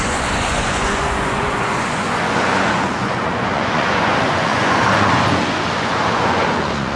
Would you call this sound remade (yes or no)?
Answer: yes